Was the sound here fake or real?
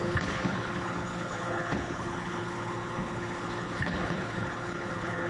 fake